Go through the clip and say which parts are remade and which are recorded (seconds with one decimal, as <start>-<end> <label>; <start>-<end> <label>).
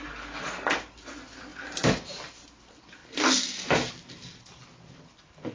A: 0.0-1.5 remade; 1.5-2.5 recorded; 2.5-3.0 remade; 3.0-3.9 recorded; 3.9-5.5 remade